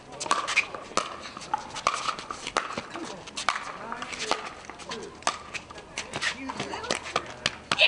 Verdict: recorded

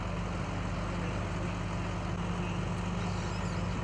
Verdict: recorded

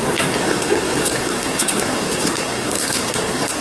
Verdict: remade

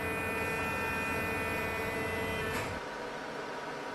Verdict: recorded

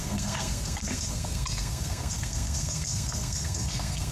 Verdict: remade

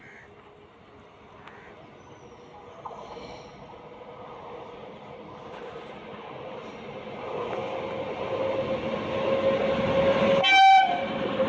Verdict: recorded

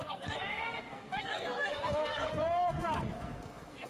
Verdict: remade